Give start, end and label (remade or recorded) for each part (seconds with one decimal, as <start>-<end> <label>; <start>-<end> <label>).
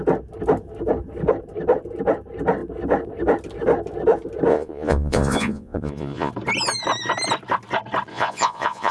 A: 0.0-4.5 recorded; 4.5-6.3 remade; 6.3-8.1 recorded; 8.1-8.9 remade